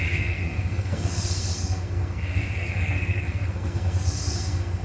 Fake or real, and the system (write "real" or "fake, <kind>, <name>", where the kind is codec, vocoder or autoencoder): fake, codec, SNAC